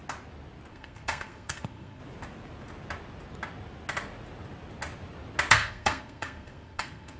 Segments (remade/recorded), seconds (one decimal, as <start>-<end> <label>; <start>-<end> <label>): 0.0-0.7 recorded; 0.7-2.0 remade; 2.0-5.5 recorded; 5.5-7.2 remade

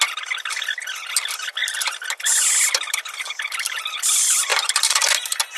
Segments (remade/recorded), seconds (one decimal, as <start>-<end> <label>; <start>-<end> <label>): 0.0-1.6 recorded; 1.6-3.2 remade; 3.2-4.5 recorded; 4.5-5.6 remade